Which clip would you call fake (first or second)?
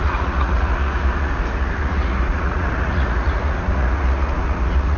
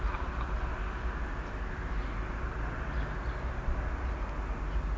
first